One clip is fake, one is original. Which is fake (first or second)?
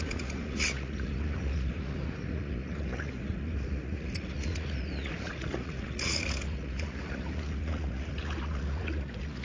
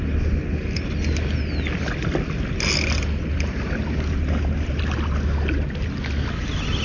first